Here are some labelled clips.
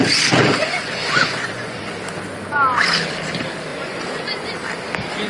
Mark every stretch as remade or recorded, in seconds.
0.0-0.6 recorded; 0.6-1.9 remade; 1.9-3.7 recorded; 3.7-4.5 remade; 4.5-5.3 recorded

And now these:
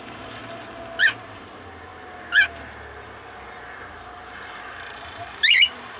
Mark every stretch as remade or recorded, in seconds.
0.0-0.4 remade; 0.4-1.2 recorded; 1.2-1.9 remade; 1.9-3.9 recorded; 3.9-6.0 remade

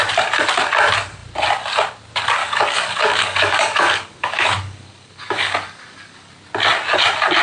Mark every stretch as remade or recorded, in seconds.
0.0-2.4 recorded; 2.4-6.3 remade; 6.3-7.4 recorded

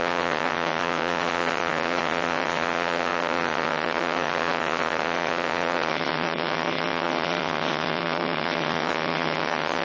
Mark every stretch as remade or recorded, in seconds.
0.0-9.8 remade

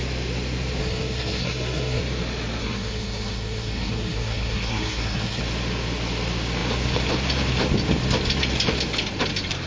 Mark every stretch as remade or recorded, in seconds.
0.0-0.8 recorded; 0.8-2.0 remade; 2.0-2.6 recorded; 2.6-5.4 remade; 5.4-9.7 recorded

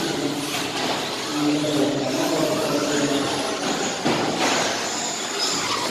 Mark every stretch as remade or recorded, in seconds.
0.0-5.9 recorded